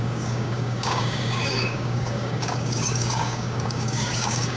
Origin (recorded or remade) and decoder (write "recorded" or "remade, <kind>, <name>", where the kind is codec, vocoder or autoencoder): remade, codec, DAC